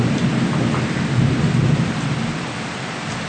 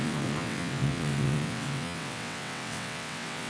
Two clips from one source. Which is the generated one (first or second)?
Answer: second